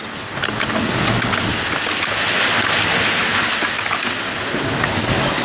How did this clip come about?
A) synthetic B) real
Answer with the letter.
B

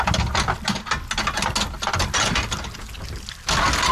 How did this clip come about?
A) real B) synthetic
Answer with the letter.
A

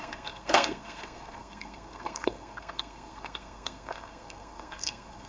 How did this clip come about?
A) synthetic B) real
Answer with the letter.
A